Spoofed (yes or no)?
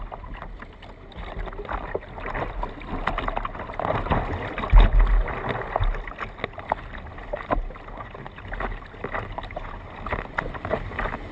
no